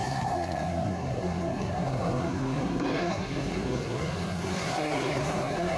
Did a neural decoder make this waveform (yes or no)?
yes